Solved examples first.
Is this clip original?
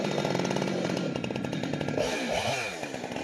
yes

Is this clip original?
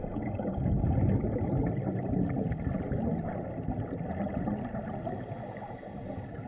yes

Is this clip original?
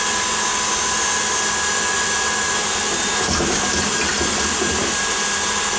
yes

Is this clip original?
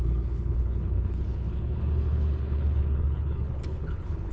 no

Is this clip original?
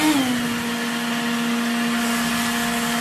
yes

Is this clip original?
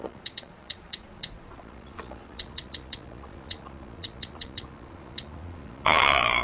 no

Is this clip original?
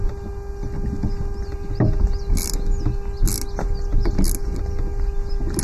yes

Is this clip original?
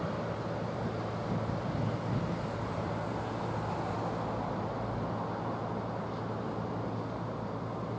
yes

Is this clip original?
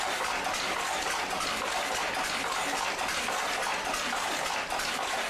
yes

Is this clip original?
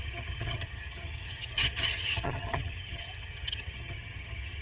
no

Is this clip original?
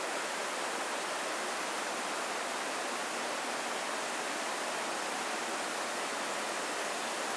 yes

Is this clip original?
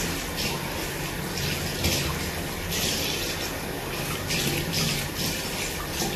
yes